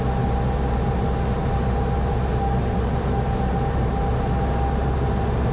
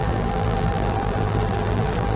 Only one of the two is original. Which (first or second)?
first